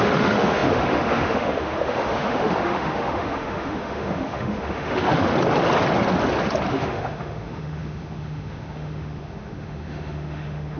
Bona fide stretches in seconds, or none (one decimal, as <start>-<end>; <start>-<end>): 5.3-6.7